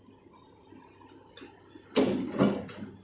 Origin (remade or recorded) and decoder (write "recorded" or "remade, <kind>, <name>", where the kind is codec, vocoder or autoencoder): recorded